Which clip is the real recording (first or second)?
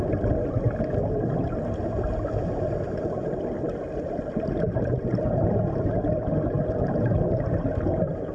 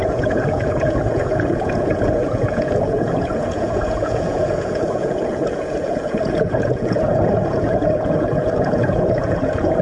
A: first